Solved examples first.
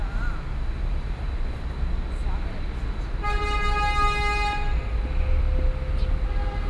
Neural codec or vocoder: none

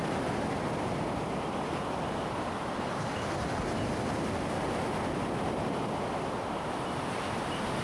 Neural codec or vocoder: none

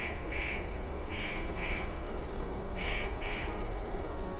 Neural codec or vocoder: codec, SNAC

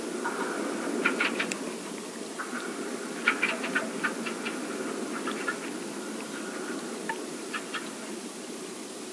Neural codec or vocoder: none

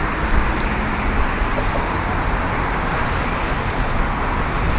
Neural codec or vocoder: none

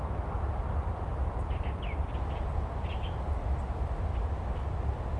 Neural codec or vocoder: none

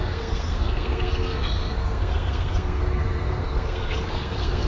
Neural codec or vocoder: codec, SNAC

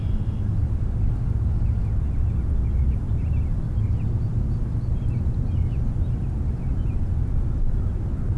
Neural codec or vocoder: none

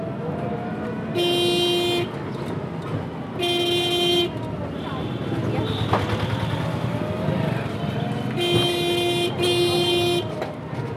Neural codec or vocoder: none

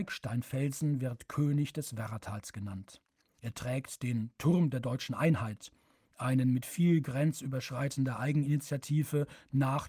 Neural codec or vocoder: none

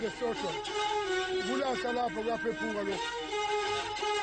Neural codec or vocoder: none